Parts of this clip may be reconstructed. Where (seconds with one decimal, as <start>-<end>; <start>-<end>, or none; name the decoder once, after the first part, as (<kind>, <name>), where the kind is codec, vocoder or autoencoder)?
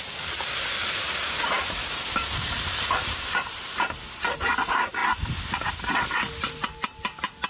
0.8-3.6 (vocoder, BigVGAN v2)